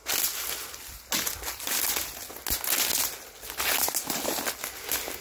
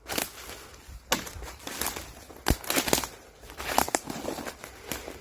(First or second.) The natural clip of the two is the first